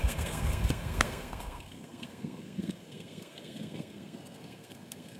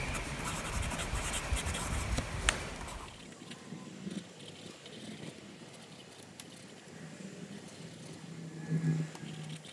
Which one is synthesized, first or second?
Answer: first